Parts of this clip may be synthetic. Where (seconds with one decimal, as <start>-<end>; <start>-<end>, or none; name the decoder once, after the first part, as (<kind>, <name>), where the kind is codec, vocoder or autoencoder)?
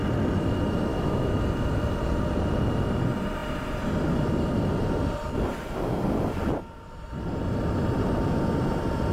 0.9-1.4 (autoencoder, DAC-VAE)